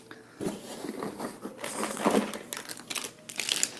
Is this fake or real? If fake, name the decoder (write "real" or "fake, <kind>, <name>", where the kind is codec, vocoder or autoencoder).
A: real